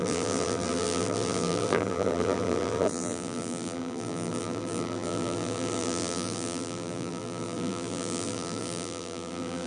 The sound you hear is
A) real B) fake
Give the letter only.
B